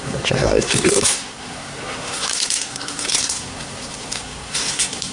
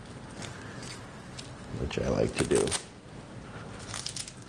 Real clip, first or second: second